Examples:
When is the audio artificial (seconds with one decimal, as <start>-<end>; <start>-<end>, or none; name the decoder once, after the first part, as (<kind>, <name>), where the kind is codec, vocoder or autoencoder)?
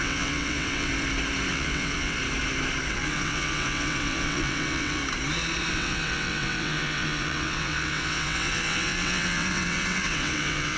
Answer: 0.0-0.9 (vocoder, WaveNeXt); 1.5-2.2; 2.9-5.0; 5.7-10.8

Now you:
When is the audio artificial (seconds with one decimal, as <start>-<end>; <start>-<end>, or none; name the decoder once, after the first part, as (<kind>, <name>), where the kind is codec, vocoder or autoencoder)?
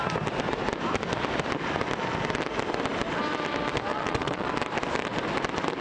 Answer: 3.9-4.5 (vocoder, WaveNeXt)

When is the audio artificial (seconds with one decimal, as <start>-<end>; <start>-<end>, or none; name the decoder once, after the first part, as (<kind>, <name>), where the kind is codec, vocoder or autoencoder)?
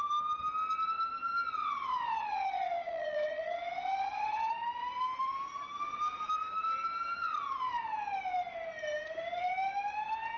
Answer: 1.6-4.5 (vocoder, WaveNeXt)